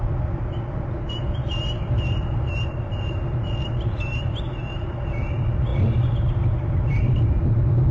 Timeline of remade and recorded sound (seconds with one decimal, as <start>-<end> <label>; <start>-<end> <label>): 0.0-7.9 recorded